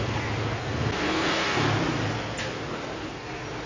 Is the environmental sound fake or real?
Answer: real